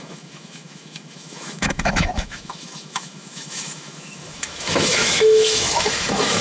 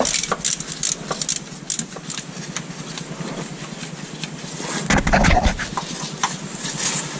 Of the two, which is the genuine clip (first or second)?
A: second